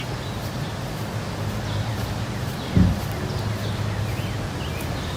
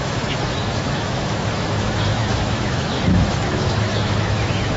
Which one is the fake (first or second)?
second